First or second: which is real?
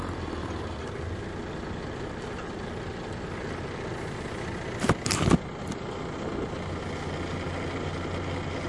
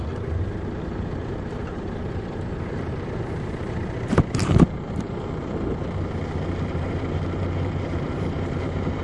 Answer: first